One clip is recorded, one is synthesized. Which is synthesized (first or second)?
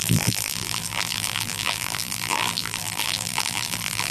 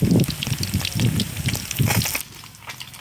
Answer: first